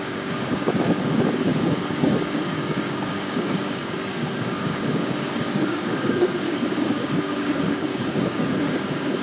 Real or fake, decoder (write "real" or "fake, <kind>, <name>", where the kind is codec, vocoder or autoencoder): fake, codec, DAC